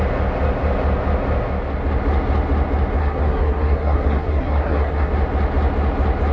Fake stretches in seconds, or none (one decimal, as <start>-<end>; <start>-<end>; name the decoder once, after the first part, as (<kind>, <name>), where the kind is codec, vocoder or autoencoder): 3.0-5.1 (codec, SNAC)